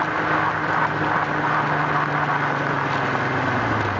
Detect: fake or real real